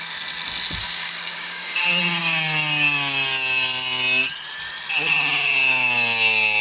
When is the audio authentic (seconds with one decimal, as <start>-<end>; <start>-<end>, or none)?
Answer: 0.0-0.8; 1.8-6.6